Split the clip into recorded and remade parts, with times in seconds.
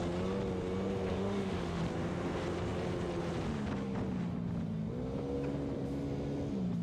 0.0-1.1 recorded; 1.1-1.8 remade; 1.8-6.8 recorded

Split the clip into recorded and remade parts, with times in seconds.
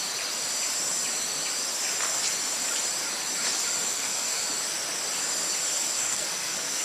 0.0-3.9 recorded; 3.9-4.4 remade; 4.4-5.8 recorded; 5.8-6.8 remade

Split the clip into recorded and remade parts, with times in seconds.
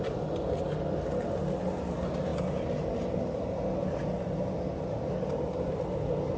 0.0-6.4 recorded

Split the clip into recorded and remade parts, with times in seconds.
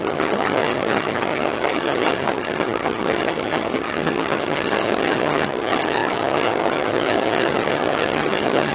0.0-8.7 remade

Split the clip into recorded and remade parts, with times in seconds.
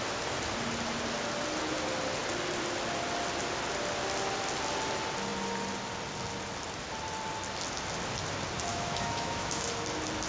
0.0-8.7 recorded; 8.7-9.7 remade; 9.7-10.3 recorded